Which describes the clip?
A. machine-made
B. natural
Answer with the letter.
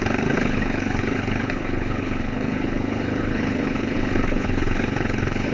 A